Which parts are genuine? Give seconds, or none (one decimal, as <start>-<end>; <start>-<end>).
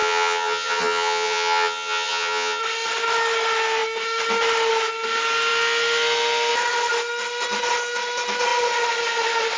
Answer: 2.6-9.6